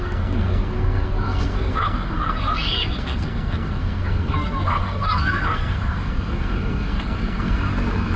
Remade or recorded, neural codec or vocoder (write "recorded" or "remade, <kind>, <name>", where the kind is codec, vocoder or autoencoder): remade, codec, SNAC